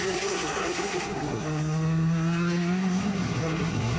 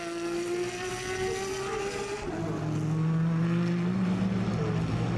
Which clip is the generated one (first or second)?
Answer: first